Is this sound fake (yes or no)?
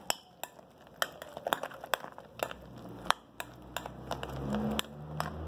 no